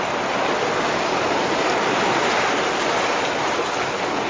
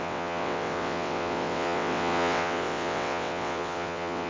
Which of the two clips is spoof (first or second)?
second